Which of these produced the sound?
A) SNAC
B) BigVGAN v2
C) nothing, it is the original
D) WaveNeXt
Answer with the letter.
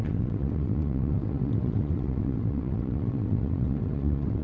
D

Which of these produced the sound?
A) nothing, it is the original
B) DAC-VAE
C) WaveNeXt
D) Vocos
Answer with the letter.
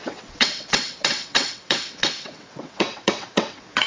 C